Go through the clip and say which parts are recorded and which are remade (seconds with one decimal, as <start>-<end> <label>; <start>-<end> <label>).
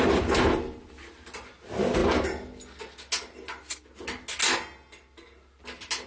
0.0-6.1 recorded